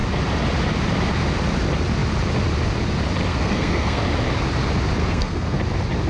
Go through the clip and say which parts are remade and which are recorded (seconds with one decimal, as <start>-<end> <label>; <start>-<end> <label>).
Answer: 0.0-3.3 recorded; 3.3-4.0 remade; 4.0-5.0 recorded; 5.0-5.6 remade; 5.6-6.1 recorded